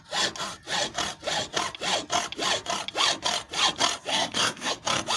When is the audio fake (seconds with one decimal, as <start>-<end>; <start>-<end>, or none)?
4.1-4.7